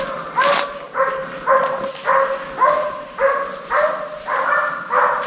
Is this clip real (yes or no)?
yes